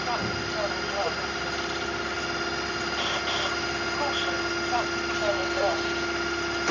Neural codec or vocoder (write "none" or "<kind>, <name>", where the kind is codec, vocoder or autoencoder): none